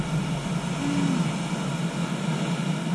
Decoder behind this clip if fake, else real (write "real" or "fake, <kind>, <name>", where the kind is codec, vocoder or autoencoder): real